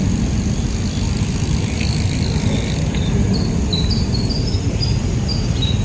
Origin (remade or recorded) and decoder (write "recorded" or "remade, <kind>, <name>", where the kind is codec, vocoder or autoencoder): recorded